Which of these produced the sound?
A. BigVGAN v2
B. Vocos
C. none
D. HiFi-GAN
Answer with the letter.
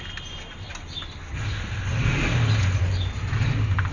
C